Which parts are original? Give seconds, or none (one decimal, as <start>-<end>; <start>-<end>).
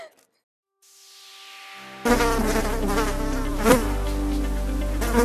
0.0-5.2